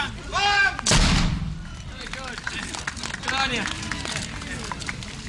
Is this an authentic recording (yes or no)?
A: yes